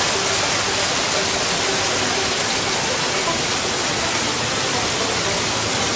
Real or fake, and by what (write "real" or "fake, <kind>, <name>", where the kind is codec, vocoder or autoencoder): real